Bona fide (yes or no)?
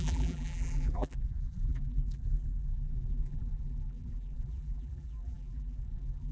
no